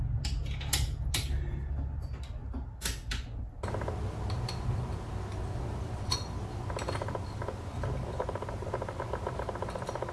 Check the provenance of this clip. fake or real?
real